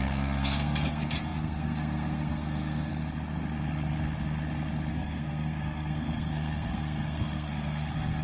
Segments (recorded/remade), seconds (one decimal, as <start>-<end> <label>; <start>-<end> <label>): 0.0-2.9 remade; 2.9-4.9 recorded; 4.9-8.2 remade